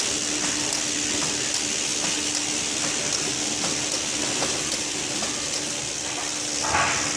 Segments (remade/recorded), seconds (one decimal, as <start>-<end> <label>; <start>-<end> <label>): 0.0-7.2 recorded